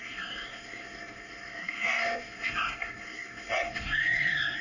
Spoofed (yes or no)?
yes